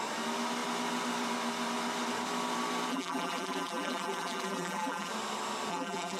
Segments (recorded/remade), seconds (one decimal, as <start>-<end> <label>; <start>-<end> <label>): 0.0-2.9 recorded; 2.9-5.1 remade; 5.1-5.7 recorded; 5.7-6.2 remade